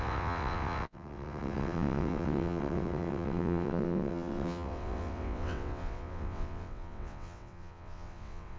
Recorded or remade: remade